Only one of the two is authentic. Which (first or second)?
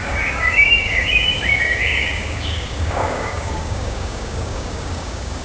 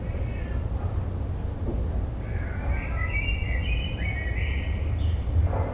second